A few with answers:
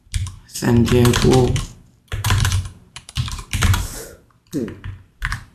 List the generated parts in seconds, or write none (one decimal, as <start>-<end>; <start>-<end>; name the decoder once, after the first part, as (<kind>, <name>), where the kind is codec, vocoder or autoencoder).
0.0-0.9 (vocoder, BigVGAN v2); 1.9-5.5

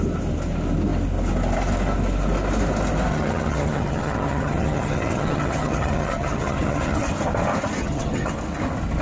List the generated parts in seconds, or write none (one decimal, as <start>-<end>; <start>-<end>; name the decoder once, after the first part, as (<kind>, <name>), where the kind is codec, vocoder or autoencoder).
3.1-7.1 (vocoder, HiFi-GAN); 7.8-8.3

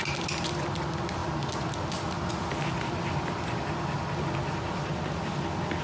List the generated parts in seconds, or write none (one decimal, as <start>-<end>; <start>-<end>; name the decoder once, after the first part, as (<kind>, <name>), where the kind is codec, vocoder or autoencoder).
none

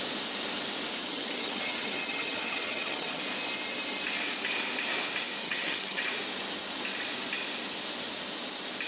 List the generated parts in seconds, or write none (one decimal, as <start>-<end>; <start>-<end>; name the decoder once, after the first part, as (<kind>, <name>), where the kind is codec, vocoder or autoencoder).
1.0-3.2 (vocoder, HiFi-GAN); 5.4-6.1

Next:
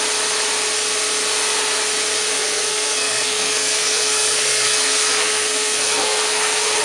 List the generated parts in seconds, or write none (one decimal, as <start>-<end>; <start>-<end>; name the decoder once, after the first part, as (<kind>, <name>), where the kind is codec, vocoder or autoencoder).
2.3-6.8 (codec, SNAC)

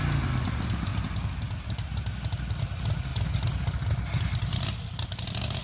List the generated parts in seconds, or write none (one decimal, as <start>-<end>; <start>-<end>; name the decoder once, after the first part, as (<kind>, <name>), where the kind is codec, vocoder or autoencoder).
none

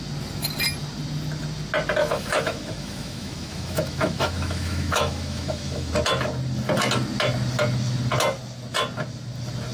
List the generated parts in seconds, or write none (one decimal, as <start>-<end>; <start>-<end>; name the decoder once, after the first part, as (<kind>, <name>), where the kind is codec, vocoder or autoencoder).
2.0-5.9 (autoencoder, DAC-VAE)

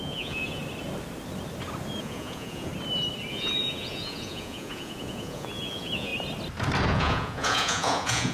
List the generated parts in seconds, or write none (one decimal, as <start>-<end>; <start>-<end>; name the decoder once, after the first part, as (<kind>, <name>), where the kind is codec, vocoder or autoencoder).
0.0-0.6 (vocoder, Vocos); 2.0-2.7; 3.3-6.1; 6.9-8.3